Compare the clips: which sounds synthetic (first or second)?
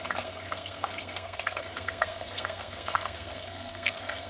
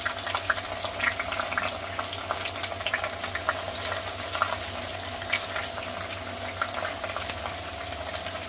first